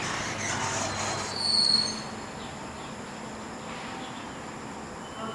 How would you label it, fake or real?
real